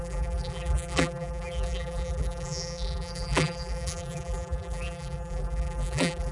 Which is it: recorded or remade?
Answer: remade